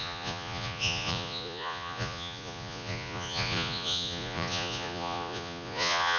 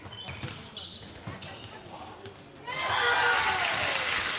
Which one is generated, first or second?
first